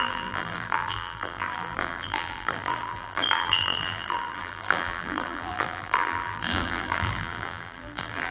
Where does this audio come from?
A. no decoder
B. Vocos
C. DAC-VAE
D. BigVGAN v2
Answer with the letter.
D